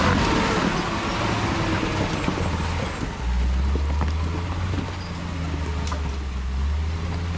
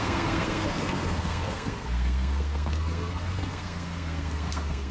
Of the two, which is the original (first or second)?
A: first